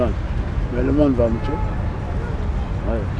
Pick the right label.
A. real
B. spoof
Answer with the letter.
A